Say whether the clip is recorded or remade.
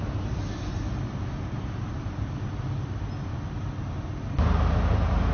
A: recorded